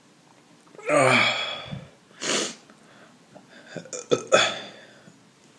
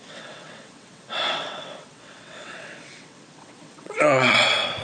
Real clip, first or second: first